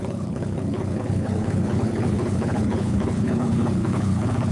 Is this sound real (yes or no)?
no